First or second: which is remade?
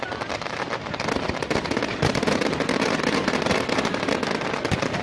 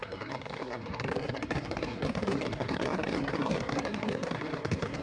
second